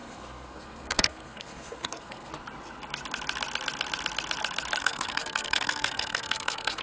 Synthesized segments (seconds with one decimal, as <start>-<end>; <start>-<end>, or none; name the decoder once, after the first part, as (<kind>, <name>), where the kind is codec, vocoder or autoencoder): 0.0-2.3 (codec, SNAC); 4.8-6.8